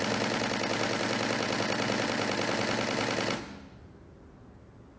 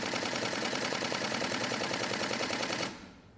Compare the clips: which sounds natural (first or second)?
first